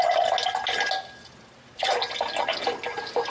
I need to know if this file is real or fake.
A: real